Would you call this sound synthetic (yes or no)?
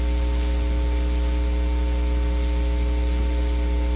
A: no